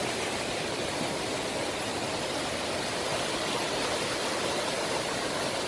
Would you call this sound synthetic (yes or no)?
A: no